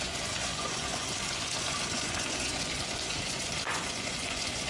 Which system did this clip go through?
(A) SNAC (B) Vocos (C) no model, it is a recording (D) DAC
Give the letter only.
B